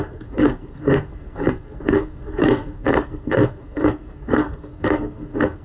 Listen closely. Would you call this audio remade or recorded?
remade